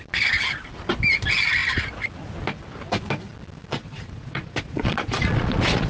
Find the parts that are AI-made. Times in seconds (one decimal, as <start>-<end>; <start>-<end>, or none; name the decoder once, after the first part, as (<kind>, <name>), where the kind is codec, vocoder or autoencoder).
3.7-5.9 (vocoder, Vocos)